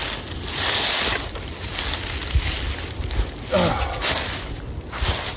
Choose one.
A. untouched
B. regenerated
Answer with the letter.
A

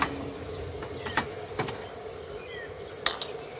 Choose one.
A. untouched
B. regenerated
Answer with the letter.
A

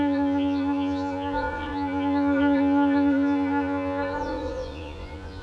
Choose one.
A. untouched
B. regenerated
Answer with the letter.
B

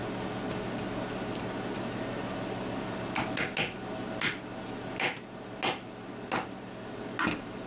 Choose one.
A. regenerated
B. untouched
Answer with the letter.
B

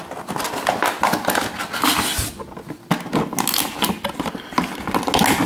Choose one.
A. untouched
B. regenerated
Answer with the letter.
A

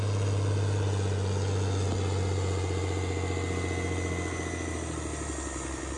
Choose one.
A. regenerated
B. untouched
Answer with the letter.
B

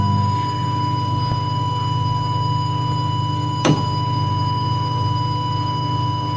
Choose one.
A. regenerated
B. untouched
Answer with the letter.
A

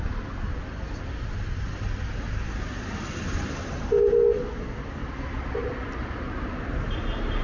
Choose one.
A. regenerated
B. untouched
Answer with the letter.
B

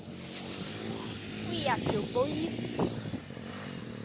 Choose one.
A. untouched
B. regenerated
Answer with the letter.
A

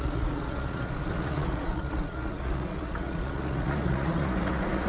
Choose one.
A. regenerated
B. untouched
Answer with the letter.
A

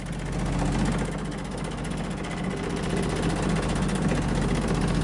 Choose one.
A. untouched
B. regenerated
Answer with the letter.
A